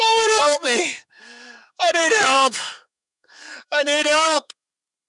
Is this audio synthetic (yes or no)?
yes